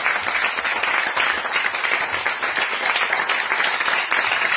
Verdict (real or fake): real